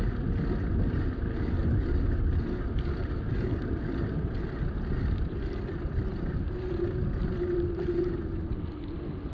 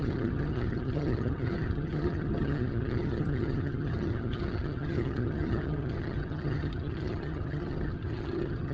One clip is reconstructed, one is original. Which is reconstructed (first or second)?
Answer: second